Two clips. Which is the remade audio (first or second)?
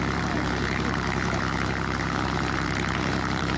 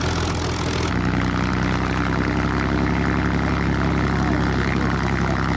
first